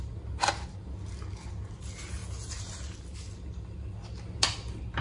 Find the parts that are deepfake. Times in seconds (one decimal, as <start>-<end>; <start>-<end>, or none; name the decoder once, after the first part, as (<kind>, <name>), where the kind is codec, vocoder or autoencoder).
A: none

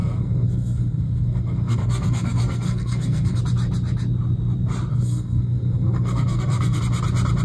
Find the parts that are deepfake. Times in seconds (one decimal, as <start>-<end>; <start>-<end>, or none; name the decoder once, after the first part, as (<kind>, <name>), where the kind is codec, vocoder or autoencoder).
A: 0.0-3.4 (codec, SNAC); 4.9-6.8

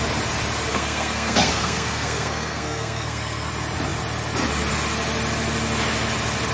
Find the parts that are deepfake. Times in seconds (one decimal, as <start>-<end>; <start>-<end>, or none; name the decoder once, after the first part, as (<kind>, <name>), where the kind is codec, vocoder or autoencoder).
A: 0.7-3.5 (codec, SNAC)